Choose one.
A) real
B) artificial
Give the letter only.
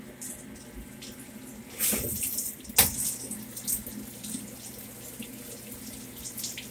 A